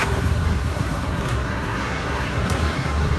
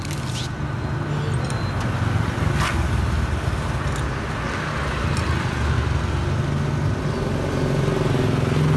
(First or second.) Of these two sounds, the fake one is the first